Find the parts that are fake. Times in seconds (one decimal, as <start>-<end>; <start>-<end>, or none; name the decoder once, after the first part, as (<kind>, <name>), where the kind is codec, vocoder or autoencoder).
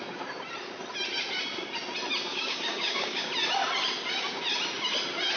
2.3-3.3 (codec, DAC)